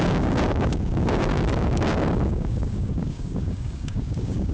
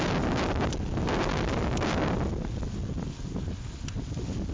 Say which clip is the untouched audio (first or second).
second